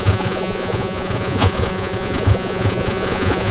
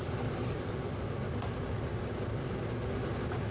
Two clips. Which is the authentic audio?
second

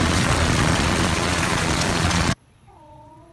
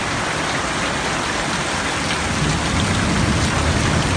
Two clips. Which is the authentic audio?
second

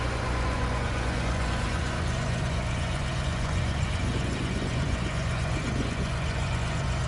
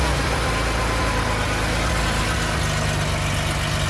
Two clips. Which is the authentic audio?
second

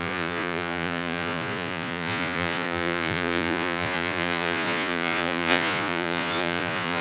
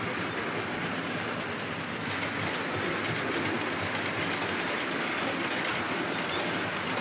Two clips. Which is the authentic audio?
second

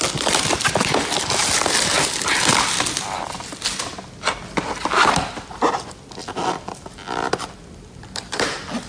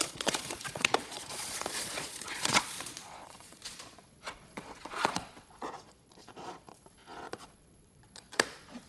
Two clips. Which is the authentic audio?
first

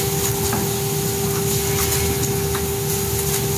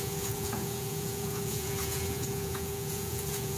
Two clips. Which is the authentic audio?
first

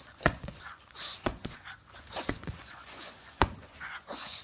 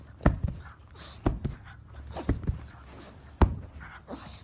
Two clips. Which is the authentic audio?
second